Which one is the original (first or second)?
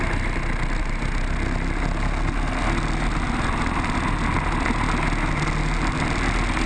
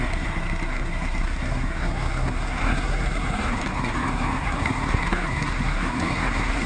first